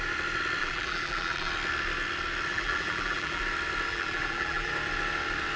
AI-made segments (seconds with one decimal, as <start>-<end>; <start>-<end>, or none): 0.6-1.5; 2.5-3.4; 3.9-4.7